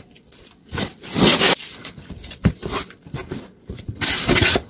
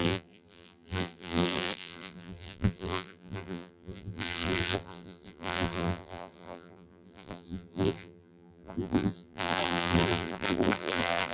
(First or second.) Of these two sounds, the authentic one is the first